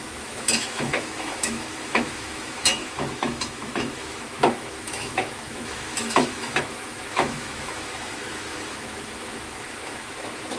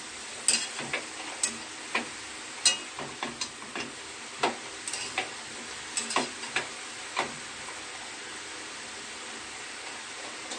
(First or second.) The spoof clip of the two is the first